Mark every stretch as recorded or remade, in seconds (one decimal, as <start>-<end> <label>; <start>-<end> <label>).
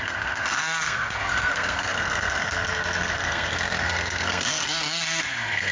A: 0.0-5.7 remade